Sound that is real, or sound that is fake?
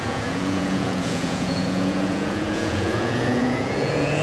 fake